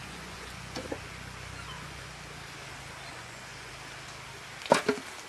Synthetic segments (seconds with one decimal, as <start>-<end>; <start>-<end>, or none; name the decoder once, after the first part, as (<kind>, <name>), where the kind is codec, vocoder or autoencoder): 0.0-2.1 (vocoder, Vocos); 3.1-3.7